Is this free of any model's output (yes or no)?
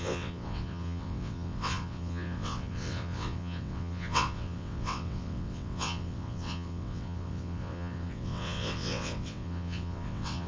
no